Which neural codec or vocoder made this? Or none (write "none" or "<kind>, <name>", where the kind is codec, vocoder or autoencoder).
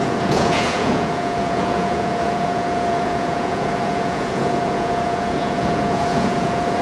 vocoder, Vocos